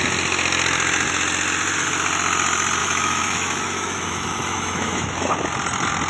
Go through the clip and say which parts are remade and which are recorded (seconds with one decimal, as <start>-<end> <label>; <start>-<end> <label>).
0.0-2.8 recorded; 2.8-5.3 remade; 5.3-6.1 recorded